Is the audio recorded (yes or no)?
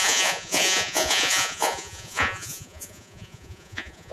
no